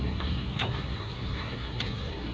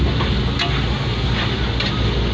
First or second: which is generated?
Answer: first